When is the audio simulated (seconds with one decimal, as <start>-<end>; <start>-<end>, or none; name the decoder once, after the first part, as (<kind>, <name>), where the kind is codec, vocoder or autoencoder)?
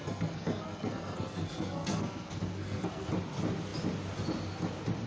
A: 0.0-3.1 (codec, SNAC)